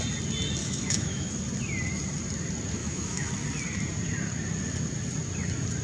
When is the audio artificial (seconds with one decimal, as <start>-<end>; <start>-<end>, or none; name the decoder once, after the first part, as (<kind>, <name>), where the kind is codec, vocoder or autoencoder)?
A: 0.6-1.3 (autoencoder, DAC-VAE); 2.8-3.3